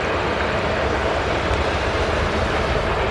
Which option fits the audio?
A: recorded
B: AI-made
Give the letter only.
A